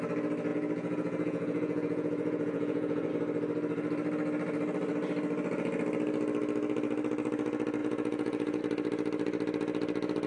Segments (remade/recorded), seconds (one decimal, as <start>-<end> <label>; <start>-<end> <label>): 0.0-0.5 recorded; 0.5-3.1 remade; 3.1-7.8 recorded; 7.8-8.6 remade; 8.6-10.3 recorded